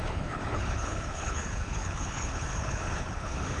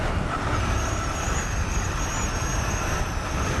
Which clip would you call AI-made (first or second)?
first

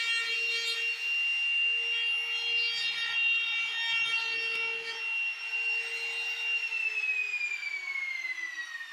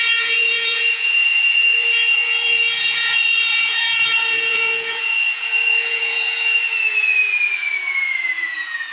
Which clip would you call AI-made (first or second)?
second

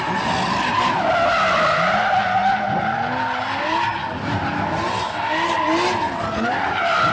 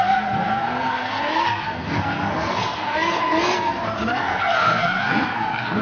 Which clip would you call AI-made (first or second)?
second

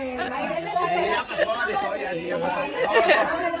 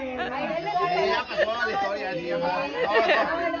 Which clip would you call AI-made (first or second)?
first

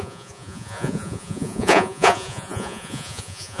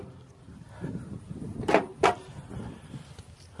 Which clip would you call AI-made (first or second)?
first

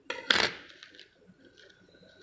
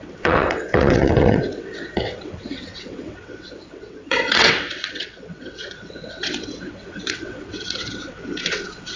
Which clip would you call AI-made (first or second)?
second